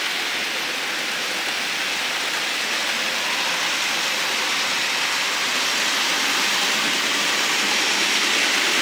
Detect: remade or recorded recorded